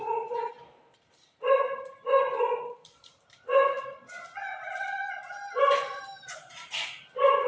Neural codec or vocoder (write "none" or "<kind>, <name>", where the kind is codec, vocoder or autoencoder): none